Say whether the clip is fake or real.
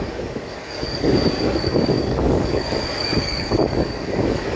fake